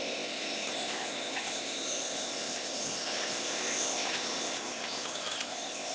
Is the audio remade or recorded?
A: remade